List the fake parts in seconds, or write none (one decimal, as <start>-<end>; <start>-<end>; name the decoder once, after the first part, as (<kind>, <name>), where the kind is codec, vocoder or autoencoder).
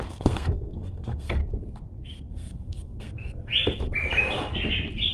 0.0-1.4 (codec, SNAC); 2.3-3.5